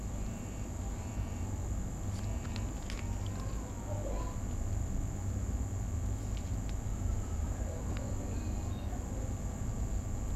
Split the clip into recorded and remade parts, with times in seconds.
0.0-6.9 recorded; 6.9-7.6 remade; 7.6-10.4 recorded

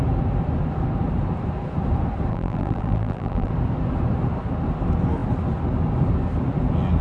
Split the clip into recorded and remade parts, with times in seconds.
0.0-2.3 recorded; 2.3-3.5 remade; 3.5-7.0 recorded

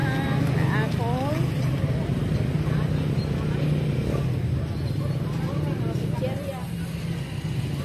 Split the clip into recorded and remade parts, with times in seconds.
0.0-7.8 recorded

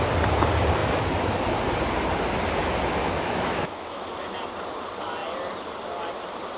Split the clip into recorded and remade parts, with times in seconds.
0.0-3.0 recorded; 3.0-4.0 remade; 4.0-6.6 recorded